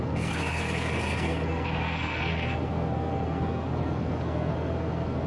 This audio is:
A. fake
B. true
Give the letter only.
A